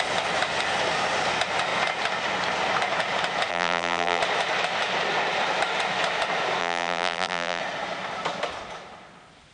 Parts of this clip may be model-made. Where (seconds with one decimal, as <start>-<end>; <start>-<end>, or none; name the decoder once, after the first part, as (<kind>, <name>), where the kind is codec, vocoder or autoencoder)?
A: 3.5-4.2 (vocoder, BigVGAN v2); 6.6-7.6